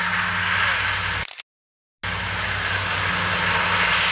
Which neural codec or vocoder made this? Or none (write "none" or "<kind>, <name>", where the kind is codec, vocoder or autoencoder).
none